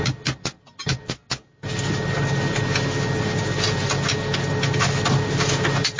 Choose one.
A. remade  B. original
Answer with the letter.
B